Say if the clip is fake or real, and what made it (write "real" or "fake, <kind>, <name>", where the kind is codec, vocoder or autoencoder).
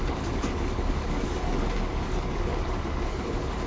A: fake, codec, DAC